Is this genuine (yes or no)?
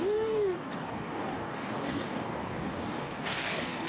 no